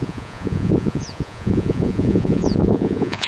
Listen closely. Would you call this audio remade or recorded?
remade